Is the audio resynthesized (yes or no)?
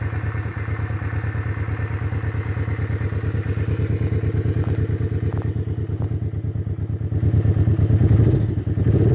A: no